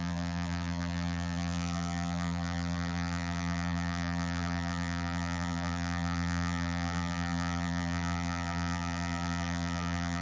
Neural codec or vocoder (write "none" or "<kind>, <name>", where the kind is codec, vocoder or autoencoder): vocoder, BigVGAN v2